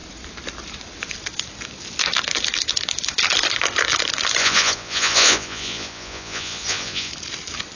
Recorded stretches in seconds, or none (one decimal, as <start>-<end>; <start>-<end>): 0.0-4.4; 7.1-7.8